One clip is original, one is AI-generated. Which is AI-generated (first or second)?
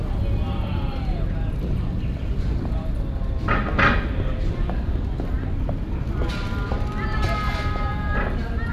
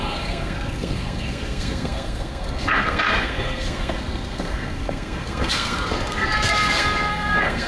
second